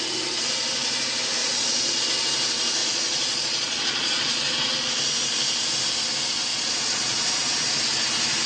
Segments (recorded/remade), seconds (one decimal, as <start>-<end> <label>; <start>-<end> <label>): 0.0-1.4 recorded; 1.4-2.0 remade; 2.0-2.8 recorded; 2.8-4.7 remade; 4.7-6.5 recorded; 6.5-7.7 remade; 7.7-8.5 recorded